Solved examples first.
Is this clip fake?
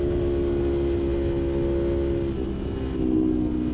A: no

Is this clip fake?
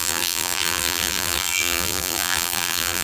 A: yes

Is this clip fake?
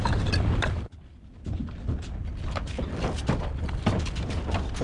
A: yes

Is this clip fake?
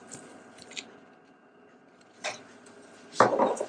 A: no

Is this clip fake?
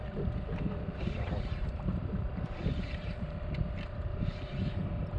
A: yes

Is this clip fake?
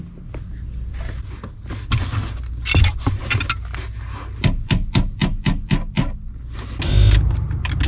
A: no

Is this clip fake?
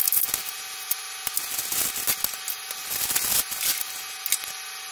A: no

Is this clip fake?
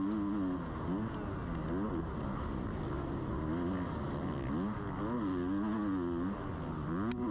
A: no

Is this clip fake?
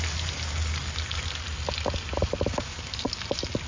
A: no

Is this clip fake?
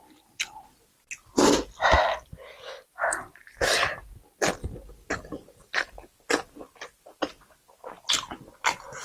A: no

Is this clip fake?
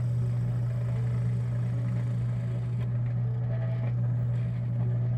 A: no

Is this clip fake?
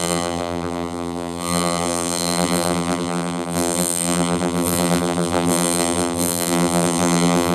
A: yes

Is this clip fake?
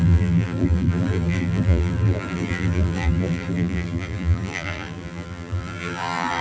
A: yes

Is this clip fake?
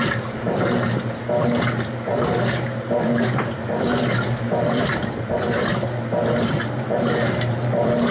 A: yes